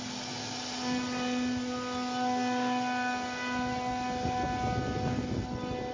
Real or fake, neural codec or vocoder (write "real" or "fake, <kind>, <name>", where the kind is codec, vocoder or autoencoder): real